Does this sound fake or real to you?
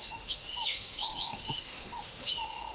fake